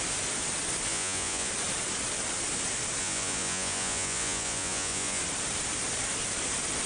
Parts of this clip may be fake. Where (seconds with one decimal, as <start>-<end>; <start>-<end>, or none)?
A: 0.9-1.5; 3.0-5.2